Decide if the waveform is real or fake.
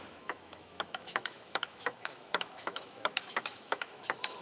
fake